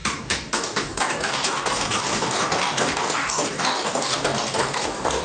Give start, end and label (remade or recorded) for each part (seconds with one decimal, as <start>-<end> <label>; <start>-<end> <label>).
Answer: 0.0-5.2 remade